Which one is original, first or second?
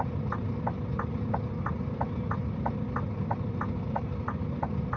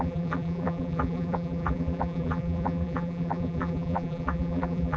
first